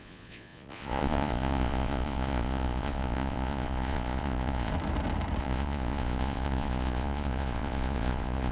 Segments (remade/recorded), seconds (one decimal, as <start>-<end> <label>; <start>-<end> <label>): 0.0-4.7 remade; 4.7-5.4 recorded; 5.4-8.5 remade